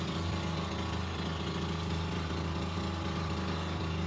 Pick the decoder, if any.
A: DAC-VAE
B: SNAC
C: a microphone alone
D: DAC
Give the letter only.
C